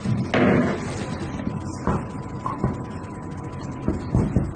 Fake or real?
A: real